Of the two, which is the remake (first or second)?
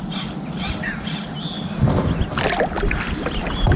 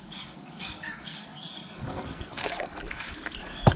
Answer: second